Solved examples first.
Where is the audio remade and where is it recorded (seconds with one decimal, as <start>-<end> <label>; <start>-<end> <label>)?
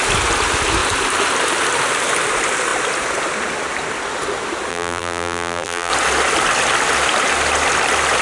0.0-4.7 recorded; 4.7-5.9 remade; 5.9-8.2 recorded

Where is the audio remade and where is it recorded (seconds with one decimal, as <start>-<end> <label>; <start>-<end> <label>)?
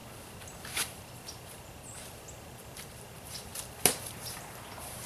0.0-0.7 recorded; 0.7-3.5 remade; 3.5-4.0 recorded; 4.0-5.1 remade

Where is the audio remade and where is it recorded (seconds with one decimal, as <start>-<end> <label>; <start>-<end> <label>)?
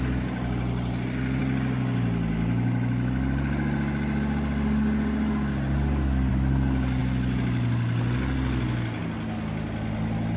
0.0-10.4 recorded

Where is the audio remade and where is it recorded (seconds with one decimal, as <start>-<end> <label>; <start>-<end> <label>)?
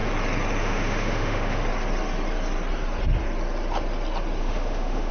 0.0-0.6 recorded; 0.6-1.6 remade; 1.6-4.4 recorded; 4.4-5.1 remade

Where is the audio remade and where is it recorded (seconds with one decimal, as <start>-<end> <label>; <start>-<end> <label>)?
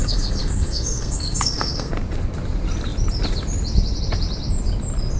0.0-1.9 remade; 1.9-5.2 recorded